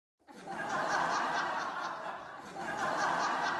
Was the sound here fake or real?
real